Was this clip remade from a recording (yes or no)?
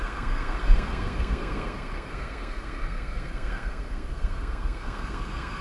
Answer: yes